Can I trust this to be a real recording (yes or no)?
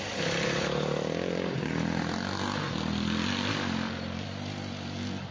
yes